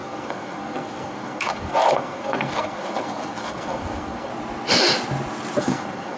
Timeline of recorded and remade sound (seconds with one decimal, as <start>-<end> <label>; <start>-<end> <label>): 0.0-4.3 remade; 4.3-5.6 recorded; 5.6-6.2 remade